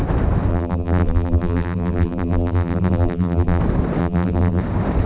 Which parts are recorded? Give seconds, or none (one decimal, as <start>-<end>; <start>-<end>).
0.0-0.5; 3.6-4.0; 4.6-5.1